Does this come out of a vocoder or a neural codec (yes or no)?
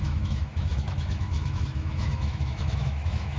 yes